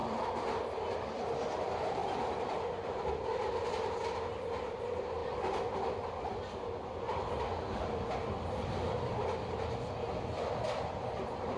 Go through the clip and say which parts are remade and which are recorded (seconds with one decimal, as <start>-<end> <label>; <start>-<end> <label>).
0.0-11.6 recorded